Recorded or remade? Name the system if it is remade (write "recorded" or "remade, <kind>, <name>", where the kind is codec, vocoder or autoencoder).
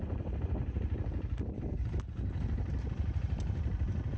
recorded